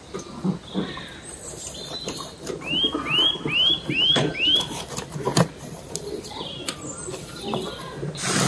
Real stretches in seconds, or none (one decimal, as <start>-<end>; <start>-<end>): 0.0-5.3; 5.9-8.5